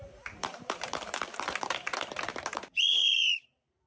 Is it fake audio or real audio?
fake